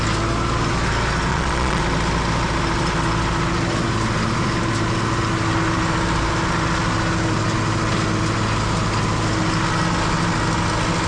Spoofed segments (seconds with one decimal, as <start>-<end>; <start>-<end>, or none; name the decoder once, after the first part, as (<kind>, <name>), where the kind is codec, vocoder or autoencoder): 1.3-1.8 (vocoder, Vocos)